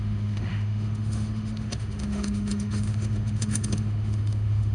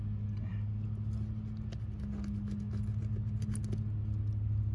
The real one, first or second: second